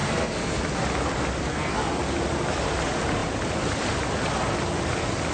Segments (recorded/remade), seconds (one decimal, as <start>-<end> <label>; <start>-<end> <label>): 0.0-0.6 remade; 0.6-1.5 recorded; 1.5-2.0 remade; 2.0-5.3 recorded